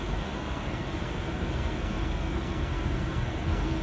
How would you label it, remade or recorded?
remade